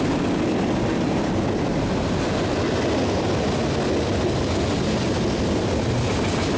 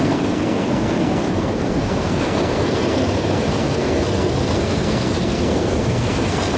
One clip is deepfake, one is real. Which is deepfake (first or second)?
second